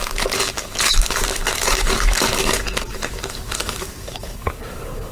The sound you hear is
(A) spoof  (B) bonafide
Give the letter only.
A